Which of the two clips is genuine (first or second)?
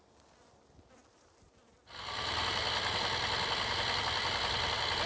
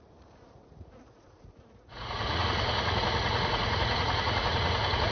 first